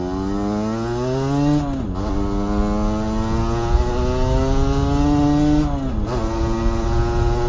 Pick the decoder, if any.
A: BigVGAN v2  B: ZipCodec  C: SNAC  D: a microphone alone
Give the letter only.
D